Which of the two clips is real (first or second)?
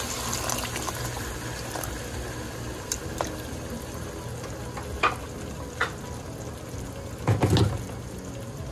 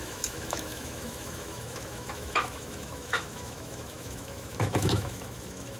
first